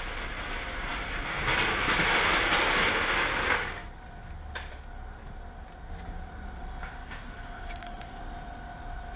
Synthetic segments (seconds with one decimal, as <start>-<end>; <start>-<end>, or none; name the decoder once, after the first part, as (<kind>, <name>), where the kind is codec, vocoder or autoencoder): 6.8-8.2 (codec, DAC)